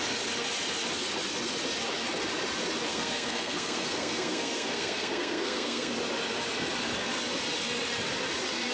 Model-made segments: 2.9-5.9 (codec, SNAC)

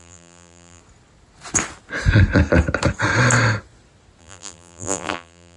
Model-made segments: 0.0-0.8 (vocoder, BigVGAN v2); 4.2-5.6

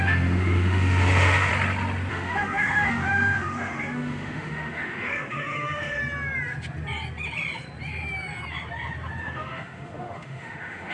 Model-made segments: 0.0-1.5 (autoencoder, DAC-VAE); 2.1-6.0; 9.2-10.9

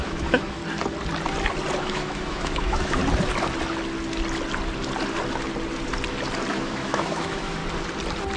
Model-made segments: 0.0-0.6 (autoencoder, DAC-VAE); 1.8-3.0; 6.5-7.6

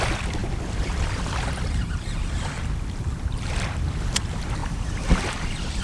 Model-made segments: 0.0-5.8 (vocoder, BigVGAN v2)

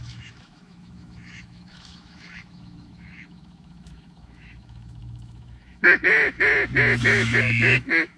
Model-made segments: 0.0-6.5 (autoencoder, DAC-VAE); 7.0-8.2

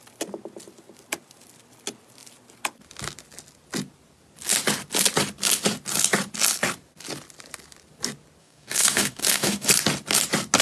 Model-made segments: 8.4-9.7 (codec, DAC)